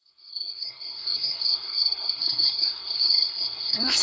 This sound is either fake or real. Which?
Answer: fake